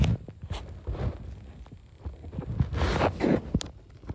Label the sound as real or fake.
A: real